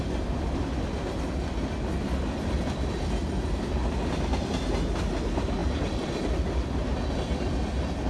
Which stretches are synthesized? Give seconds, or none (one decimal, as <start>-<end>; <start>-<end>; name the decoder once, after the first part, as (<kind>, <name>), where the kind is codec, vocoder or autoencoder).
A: none

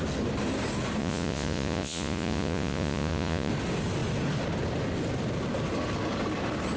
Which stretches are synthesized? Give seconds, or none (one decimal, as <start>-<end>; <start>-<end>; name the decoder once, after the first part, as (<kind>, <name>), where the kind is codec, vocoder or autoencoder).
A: 1.0-3.5 (vocoder, Vocos)

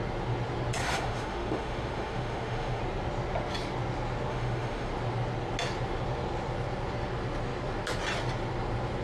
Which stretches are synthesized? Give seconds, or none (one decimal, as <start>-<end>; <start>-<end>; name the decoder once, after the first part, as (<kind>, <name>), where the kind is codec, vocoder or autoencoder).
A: 0.8-2.8 (autoencoder, DAC-VAE); 4.3-4.9

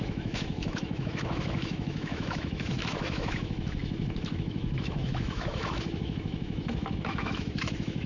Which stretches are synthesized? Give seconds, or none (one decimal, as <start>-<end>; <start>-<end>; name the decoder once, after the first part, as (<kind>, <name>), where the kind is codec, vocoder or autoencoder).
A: 0.0-8.1 (autoencoder, DAC-VAE)

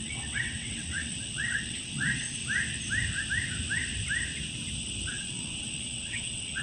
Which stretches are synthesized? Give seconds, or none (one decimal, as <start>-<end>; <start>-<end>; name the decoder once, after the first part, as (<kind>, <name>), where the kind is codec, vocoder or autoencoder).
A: 0.0-2.4 (vocoder, WaveNeXt); 5.1-6.6

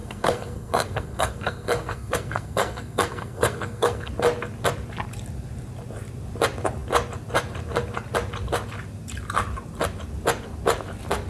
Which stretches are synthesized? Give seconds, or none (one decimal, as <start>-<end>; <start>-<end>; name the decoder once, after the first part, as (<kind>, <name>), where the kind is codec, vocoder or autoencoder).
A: 0.0-4.1 (codec, SNAC)